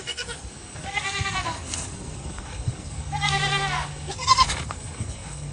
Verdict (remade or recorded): remade